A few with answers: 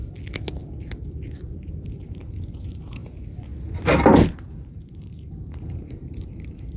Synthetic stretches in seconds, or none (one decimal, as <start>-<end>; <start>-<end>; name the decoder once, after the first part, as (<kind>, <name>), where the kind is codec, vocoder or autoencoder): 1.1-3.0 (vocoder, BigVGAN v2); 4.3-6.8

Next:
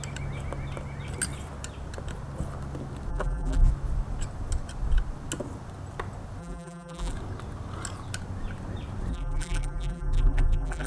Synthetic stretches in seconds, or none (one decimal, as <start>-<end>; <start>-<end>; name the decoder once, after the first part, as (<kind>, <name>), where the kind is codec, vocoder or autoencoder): 3.1-3.7 (vocoder, BigVGAN v2); 6.4-7.1; 9.1-10.9

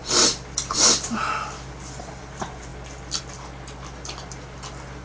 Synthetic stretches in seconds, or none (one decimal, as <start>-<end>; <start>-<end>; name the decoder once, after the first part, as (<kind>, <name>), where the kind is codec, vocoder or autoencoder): 0.0-2.2 (vocoder, BigVGAN v2)